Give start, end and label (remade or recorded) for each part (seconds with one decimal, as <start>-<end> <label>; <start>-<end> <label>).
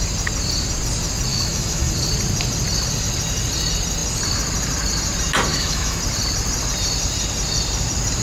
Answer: 0.0-1.3 recorded; 1.3-1.9 remade; 1.9-5.5 recorded; 5.5-6.0 remade; 6.0-8.2 recorded